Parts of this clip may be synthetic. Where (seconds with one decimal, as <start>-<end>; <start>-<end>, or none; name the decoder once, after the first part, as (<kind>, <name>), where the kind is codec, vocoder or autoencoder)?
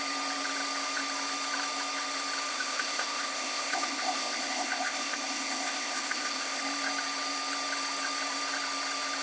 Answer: 2.5-6.6 (codec, ZipCodec)